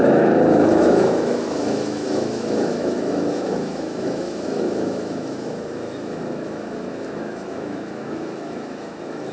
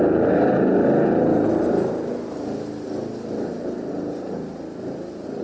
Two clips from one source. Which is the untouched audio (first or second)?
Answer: second